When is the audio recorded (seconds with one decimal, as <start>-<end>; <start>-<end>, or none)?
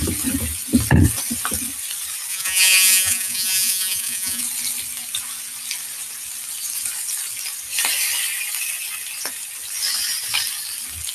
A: 0.0-2.3; 4.4-11.1